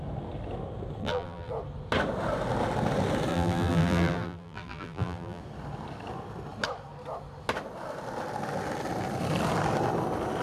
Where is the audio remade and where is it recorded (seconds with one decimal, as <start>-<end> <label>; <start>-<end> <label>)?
0.0-1.0 recorded; 1.0-1.5 remade; 1.5-3.3 recorded; 3.3-5.4 remade; 5.4-10.4 recorded